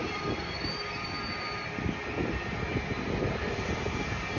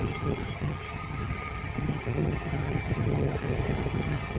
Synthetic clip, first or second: second